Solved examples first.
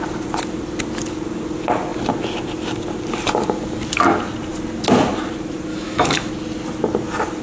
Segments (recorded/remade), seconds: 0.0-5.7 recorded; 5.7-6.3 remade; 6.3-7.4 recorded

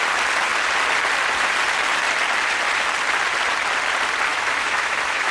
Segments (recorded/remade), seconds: 0.0-4.3 recorded; 4.3-5.3 remade

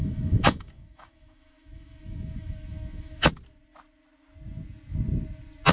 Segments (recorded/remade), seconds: 0.0-3.3 remade; 3.3-5.7 recorded

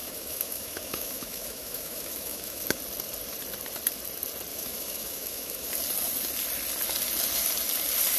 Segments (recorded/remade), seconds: 0.0-2.8 remade; 2.8-4.5 recorded; 4.5-5.7 remade; 5.7-8.2 recorded

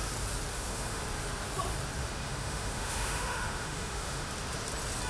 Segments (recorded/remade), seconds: 0.0-0.5 recorded; 0.5-1.0 remade; 1.0-2.0 recorded; 2.0-4.3 remade; 4.3-5.1 recorded

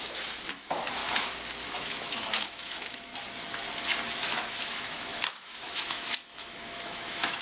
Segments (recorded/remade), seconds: 0.0-1.0 remade; 1.0-1.6 recorded; 1.6-3.1 remade; 3.1-4.2 recorded; 4.2-7.4 remade